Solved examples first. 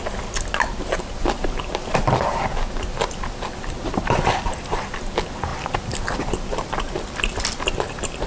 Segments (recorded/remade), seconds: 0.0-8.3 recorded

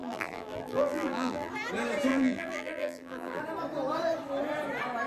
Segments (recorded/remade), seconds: 0.0-1.5 remade; 1.5-2.1 recorded; 2.1-3.4 remade; 3.4-5.1 recorded

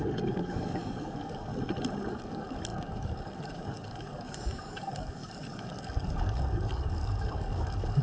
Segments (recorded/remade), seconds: 0.0-1.5 remade; 1.5-2.1 recorded; 2.1-8.0 remade

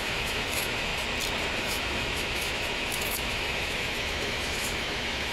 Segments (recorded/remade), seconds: 0.0-0.9 remade; 0.9-1.6 recorded; 1.6-5.3 remade

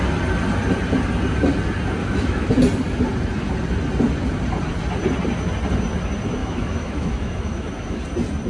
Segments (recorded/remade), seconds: 0.0-2.0 recorded; 2.0-2.5 remade; 2.5-6.4 recorded; 6.4-8.0 remade; 8.0-8.5 recorded

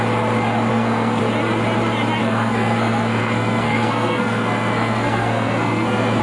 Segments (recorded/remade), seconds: 0.0-0.7 recorded; 0.7-1.2 remade; 1.2-2.2 recorded; 2.2-6.2 remade

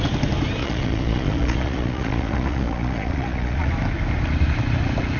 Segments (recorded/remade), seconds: 0.0-0.6 recorded; 0.6-3.7 remade; 3.7-5.2 recorded

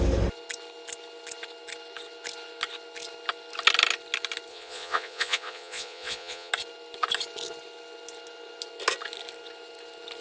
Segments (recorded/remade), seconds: 0.0-4.5 recorded; 4.5-6.5 remade; 6.5-10.2 recorded